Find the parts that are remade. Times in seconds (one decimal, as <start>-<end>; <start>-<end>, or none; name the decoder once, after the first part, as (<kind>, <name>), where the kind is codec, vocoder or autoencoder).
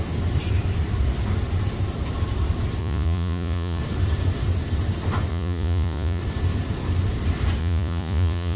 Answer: 2.8-3.8 (vocoder, Vocos); 5.3-6.2; 7.6-8.6